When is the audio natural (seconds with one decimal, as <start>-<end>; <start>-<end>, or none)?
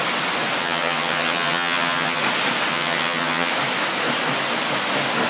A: 0.0-0.6; 2.2-2.7; 3.5-5.3